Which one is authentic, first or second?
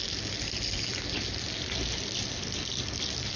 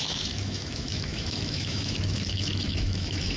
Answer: first